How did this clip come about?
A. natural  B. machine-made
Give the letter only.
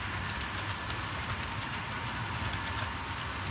A